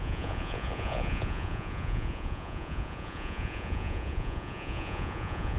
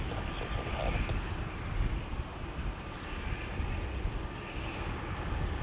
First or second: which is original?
second